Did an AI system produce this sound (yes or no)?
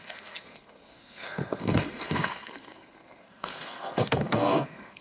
yes